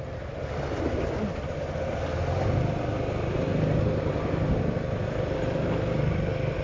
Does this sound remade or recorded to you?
recorded